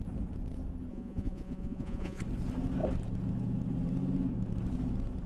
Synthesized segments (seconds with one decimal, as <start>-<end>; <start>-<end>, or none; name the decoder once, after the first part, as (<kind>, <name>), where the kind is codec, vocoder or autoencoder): 0.9-2.2 (vocoder, Vocos)